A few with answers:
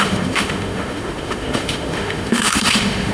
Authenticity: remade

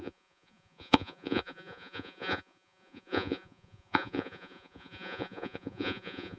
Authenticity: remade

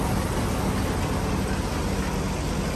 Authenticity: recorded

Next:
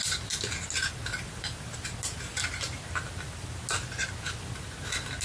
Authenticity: recorded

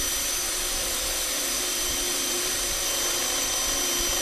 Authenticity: remade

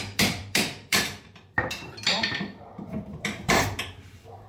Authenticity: remade